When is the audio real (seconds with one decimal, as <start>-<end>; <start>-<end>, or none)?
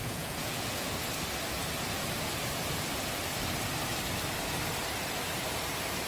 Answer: 1.0-6.1